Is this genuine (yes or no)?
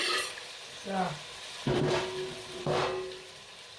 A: yes